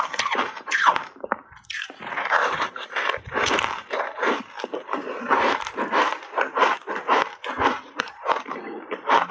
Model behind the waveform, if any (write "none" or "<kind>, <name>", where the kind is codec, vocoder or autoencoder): vocoder, BigVGAN v2